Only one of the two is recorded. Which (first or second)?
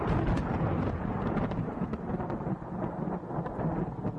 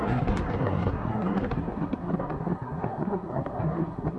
first